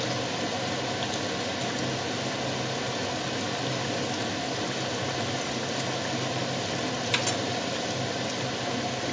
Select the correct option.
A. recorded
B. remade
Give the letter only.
A